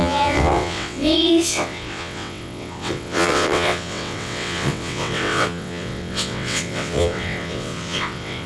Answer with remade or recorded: remade